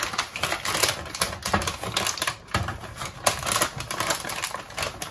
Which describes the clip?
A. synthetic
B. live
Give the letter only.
B